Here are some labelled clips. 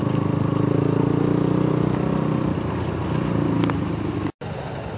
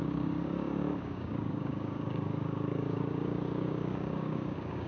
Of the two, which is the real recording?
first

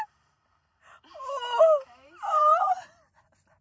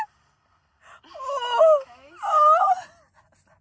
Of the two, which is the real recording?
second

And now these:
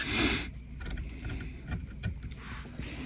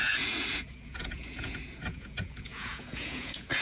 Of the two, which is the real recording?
first